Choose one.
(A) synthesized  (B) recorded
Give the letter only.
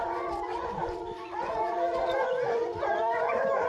A